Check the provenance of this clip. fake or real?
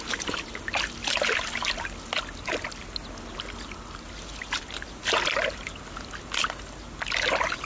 real